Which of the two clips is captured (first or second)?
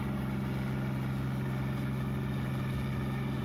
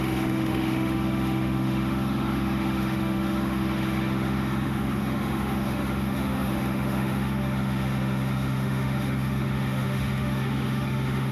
first